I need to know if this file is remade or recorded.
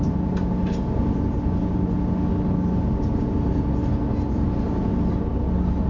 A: recorded